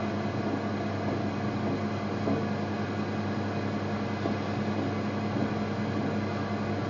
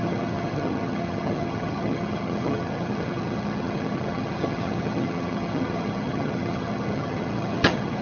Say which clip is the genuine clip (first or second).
first